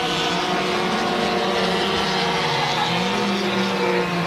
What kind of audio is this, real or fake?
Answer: real